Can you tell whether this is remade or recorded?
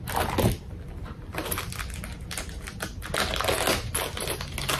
recorded